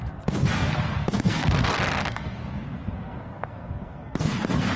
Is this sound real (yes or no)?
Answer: no